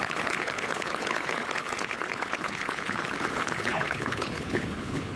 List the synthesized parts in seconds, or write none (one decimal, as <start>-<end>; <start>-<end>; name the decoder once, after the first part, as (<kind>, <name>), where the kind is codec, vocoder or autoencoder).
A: 0.0-5.2 (codec, HILCodec)